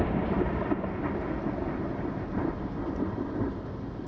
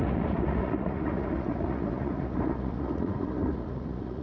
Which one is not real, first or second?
second